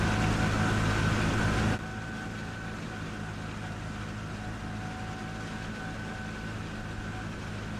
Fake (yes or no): no